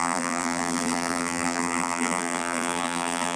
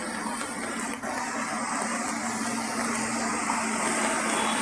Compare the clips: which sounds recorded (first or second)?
second